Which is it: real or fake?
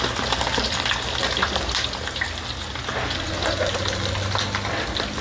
real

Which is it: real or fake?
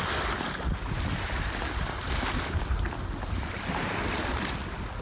real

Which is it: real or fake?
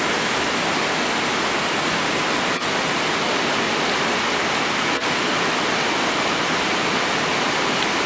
real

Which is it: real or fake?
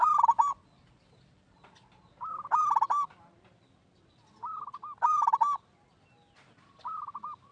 real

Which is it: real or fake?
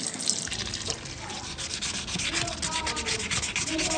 real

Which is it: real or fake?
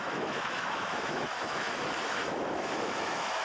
fake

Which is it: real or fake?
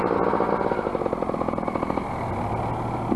real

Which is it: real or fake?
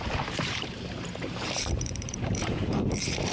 fake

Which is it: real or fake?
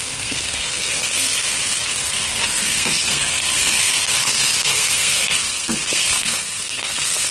fake